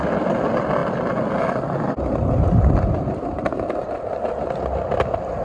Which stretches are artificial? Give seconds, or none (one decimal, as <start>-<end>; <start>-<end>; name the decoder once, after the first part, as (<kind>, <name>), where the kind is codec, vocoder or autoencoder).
none